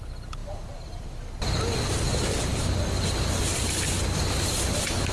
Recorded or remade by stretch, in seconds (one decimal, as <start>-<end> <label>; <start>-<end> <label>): 0.0-5.1 recorded